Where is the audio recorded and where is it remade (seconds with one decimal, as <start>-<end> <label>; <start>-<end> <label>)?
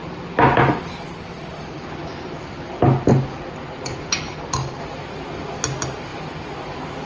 0.0-7.1 recorded